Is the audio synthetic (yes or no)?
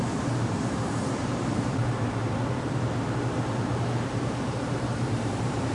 yes